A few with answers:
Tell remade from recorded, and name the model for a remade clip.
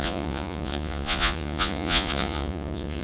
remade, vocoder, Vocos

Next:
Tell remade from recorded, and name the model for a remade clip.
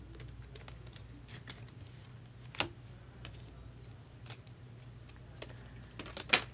recorded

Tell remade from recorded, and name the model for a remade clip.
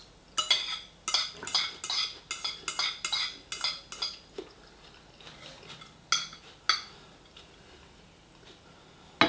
recorded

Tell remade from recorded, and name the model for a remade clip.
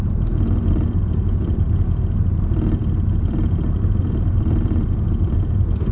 remade, vocoder, BigVGAN v2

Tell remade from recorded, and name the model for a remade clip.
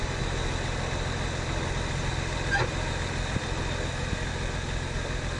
recorded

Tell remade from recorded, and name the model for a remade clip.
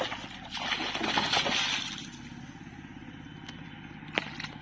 recorded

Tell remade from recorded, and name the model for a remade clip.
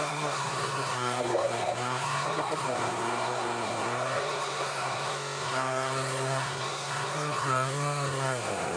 remade, codec, SNAC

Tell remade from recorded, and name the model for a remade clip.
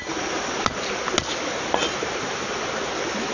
recorded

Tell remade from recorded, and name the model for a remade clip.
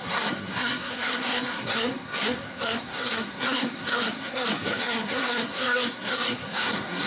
remade, codec, SNAC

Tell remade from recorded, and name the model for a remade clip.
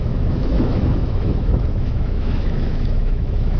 remade, autoencoder, DAC-VAE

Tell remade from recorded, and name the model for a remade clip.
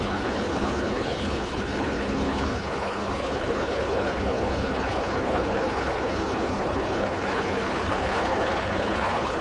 remade, codec, HILCodec